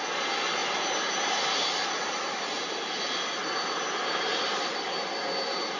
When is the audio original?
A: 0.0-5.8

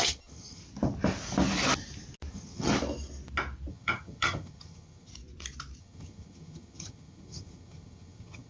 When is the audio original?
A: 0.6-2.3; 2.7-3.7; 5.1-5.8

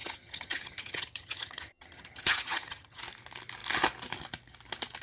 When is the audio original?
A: 3.0-5.0

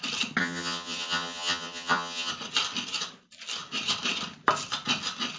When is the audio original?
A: 0.0-0.4; 2.3-5.4

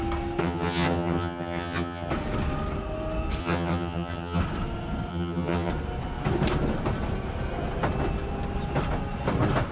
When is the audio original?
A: 0.0-0.4; 2.1-3.4; 4.4-5.1; 5.7-9.7

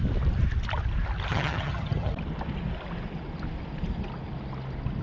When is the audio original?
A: 0.0-1.3; 2.1-5.0

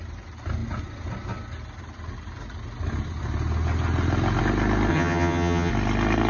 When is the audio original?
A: 0.0-4.9; 5.7-6.3